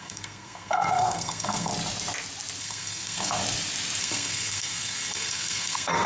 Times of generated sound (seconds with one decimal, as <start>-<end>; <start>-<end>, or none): 0.0-1.7; 2.6-3.4; 4.0-6.1